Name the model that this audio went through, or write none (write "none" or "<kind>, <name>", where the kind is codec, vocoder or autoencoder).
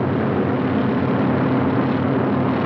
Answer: none